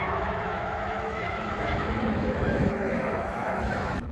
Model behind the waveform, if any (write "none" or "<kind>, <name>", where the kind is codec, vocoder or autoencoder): autoencoder, DAC-VAE